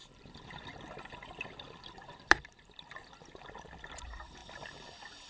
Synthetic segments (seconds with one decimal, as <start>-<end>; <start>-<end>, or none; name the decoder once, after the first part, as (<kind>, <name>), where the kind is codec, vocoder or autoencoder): 0.0-4.4 (vocoder, BigVGAN v2)